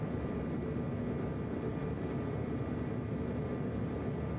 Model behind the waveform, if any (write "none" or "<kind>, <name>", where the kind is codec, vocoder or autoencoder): none